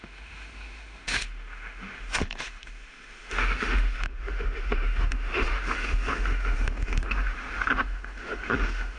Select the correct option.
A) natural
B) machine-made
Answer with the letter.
B